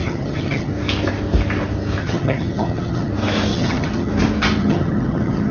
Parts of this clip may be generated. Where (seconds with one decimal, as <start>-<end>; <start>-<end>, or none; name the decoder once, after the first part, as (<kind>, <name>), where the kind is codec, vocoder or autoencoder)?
0.0-0.7 (vocoder, HiFi-GAN); 2.0-3.1; 3.5-4.1; 4.6-5.5